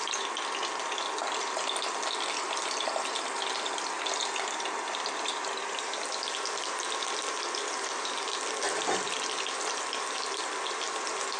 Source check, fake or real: real